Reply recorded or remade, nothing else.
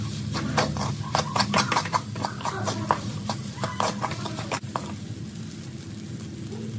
recorded